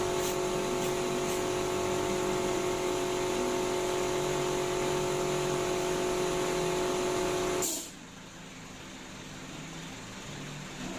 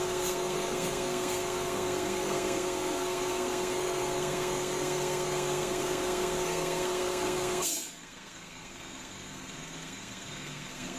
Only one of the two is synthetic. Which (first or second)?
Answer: second